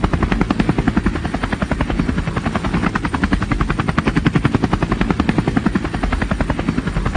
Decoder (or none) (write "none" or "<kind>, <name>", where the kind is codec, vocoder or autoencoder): none